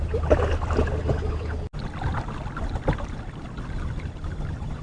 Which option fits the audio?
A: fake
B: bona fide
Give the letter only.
B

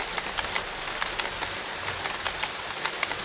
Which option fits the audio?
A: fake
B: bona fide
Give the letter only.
B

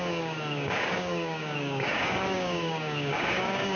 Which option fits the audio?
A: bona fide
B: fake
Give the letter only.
B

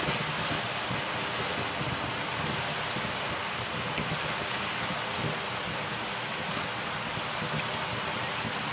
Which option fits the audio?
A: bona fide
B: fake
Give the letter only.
A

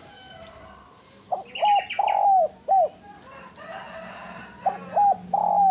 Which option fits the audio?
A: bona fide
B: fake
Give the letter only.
A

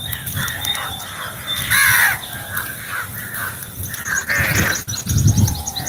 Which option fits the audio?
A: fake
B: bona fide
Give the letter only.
B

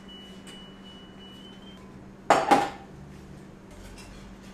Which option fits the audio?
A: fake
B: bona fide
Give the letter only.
B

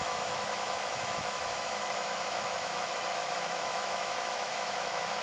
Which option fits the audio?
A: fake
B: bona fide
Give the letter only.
A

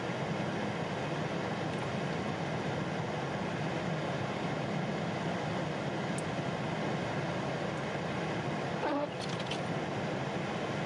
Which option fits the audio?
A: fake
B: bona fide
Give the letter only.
B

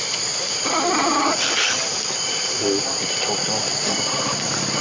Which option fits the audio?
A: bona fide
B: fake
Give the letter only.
B